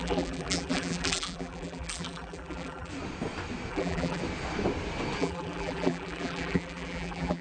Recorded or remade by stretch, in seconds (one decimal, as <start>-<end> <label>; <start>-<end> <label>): 0.0-2.9 remade; 2.9-3.7 recorded; 3.7-4.2 remade; 4.2-5.2 recorded; 5.2-7.4 remade